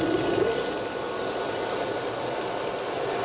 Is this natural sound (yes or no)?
yes